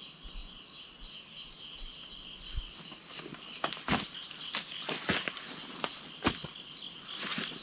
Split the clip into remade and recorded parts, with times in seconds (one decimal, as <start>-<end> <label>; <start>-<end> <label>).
0.0-7.6 recorded